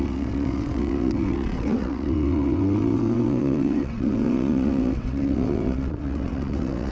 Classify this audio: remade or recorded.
remade